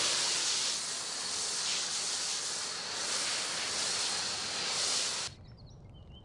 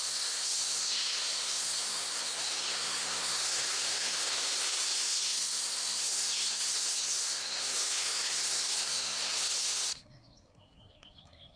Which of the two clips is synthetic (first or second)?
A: second